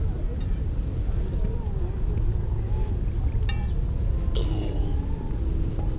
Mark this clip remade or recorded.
recorded